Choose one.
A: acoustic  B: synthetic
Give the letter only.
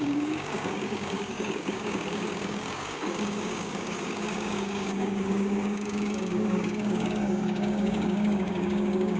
B